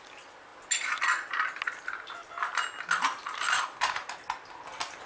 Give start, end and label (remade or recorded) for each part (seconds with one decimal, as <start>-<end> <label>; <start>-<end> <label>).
0.0-5.1 recorded